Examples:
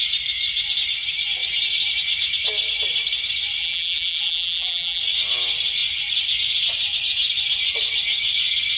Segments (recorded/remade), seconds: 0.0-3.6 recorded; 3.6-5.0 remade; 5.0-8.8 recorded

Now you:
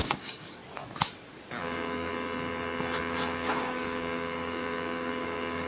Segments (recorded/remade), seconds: 0.0-0.6 remade; 0.6-1.5 recorded; 1.5-2.1 remade; 2.1-3.0 recorded; 3.0-5.7 remade